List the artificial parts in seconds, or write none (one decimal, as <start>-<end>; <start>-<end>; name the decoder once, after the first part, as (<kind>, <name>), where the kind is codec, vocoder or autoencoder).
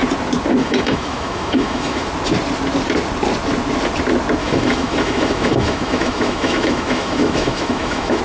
0.6-2.1 (autoencoder, DAC-VAE); 4.4-8.2